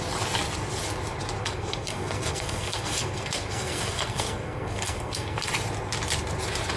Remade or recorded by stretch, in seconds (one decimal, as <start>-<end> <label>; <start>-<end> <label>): 0.0-1.4 recorded; 1.4-5.5 remade; 5.5-6.8 recorded